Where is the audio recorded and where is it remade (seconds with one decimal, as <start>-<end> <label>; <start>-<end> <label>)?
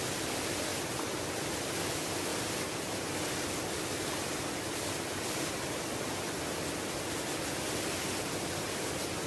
0.0-9.3 recorded